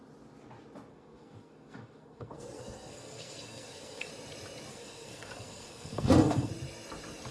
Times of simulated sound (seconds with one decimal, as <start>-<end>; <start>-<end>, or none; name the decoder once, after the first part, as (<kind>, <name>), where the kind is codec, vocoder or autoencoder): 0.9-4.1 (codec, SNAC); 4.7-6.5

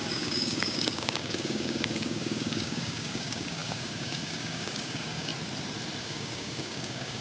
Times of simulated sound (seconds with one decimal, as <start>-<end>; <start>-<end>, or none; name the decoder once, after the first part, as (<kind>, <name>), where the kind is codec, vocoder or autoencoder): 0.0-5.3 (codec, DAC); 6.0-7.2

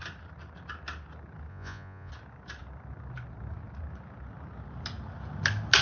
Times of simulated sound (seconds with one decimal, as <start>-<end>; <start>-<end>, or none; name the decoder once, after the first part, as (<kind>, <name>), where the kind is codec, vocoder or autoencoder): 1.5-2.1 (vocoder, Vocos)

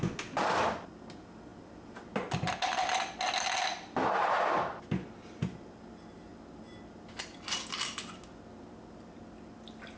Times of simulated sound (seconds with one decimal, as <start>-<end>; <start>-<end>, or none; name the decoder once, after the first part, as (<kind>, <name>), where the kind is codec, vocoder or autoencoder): none

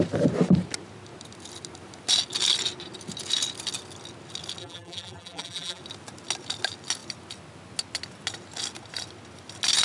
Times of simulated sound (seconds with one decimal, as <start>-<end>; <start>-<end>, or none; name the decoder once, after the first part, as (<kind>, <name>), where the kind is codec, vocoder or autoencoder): 4.6-5.8 (vocoder, BigVGAN v2)